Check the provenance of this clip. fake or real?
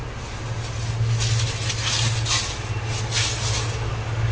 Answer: real